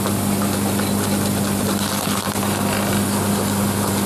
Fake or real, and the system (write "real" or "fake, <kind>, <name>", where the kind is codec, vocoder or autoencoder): real